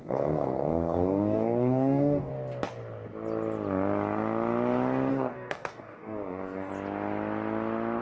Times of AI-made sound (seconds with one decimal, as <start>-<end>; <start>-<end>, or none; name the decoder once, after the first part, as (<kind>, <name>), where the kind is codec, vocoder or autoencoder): 0.0-2.3 (codec, DAC); 5.1-6.7